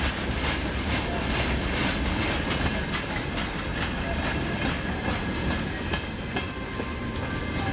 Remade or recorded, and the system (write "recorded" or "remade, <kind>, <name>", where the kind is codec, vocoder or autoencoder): recorded